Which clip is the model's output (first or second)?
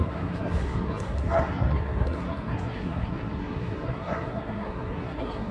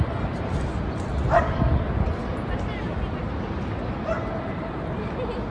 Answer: first